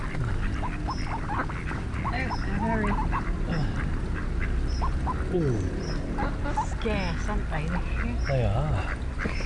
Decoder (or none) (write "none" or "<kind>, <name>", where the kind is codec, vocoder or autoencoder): none